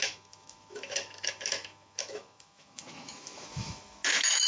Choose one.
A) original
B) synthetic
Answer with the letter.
B